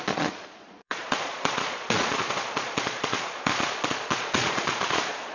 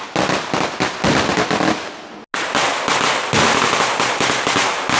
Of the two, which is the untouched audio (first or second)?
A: second